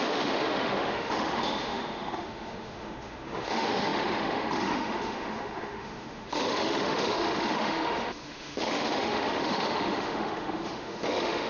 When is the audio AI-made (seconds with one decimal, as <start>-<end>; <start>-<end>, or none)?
0.0-11.5